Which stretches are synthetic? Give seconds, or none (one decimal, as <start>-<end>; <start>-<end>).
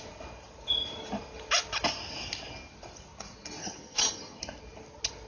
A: 3.6-4.4